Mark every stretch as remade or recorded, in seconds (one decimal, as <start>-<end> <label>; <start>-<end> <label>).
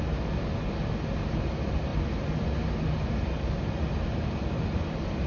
0.0-5.3 recorded